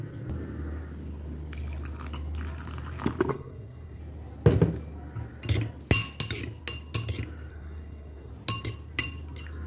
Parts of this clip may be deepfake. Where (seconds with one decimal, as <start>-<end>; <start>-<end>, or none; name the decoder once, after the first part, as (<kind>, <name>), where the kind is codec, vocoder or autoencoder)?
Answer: 3.3-4.0 (codec, SNAC); 7.5-8.3